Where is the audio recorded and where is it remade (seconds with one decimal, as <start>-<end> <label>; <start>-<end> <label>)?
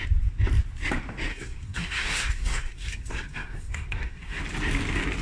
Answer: 0.0-1.3 recorded; 1.3-4.4 remade; 4.4-5.2 recorded